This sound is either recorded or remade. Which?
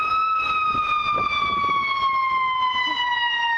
recorded